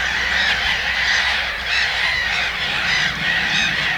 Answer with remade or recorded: remade